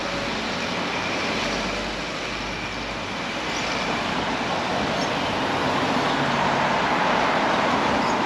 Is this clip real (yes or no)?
yes